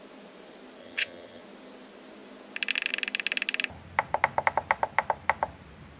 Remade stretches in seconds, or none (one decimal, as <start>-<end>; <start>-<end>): 0.8-1.4